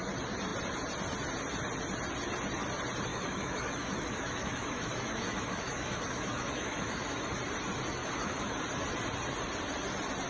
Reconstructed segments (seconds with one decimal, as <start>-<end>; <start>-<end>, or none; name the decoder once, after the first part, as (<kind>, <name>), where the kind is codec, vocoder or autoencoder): 3.1-7.3 (autoencoder, DAC-VAE); 8.0-8.6